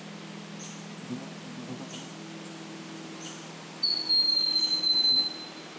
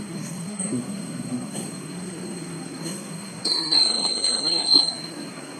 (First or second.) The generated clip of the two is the second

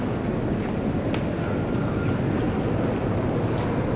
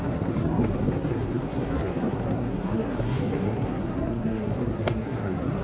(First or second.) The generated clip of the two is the second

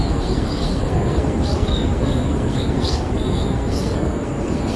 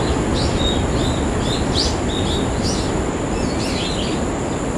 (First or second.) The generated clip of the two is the first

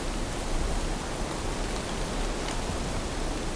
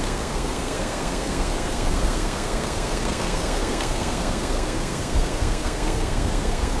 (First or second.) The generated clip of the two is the second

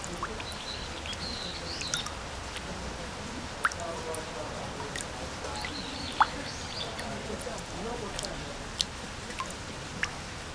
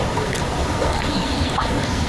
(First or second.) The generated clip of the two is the second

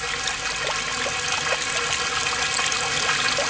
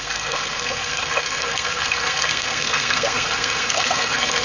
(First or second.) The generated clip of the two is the second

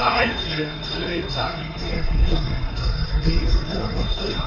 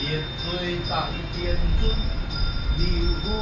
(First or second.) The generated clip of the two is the first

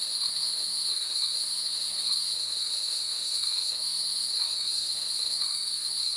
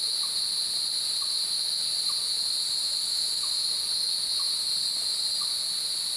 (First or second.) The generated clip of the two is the first